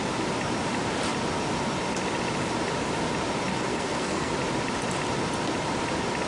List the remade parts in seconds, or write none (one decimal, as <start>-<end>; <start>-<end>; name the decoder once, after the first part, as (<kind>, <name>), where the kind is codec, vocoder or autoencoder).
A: 3.5-4.3 (codec, SNAC)